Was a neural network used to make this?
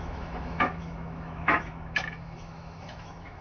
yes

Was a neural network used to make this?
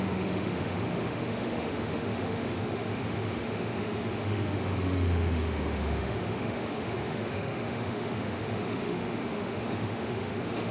yes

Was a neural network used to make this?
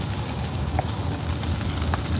no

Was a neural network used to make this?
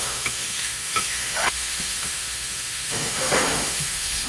yes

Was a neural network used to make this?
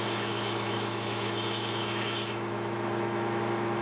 yes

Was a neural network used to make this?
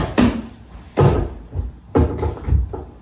no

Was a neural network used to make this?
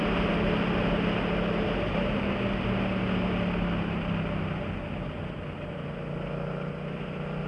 no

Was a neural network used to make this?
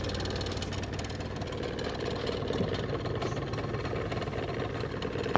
no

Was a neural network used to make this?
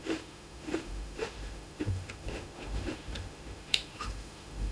yes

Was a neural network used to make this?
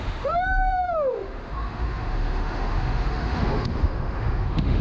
yes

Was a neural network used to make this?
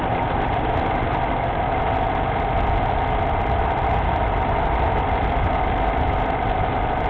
no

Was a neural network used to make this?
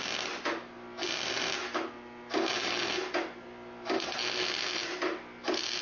no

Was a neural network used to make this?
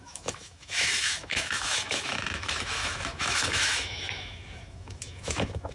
yes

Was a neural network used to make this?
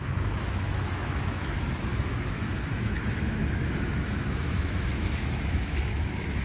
yes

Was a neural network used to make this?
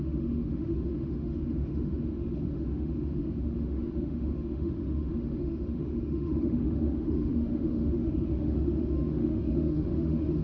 yes